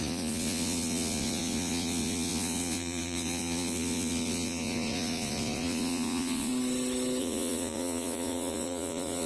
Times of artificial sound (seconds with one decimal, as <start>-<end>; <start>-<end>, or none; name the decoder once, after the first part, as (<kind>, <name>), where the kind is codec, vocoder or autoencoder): 0.0-6.5 (vocoder, Vocos); 7.2-9.3